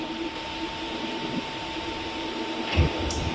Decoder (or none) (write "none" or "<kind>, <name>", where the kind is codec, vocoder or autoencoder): vocoder, BigVGAN v2